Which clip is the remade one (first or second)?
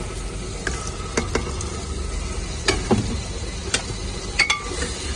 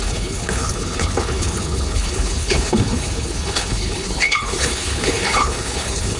second